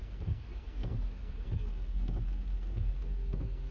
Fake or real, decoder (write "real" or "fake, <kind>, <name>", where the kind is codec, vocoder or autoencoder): fake, codec, SNAC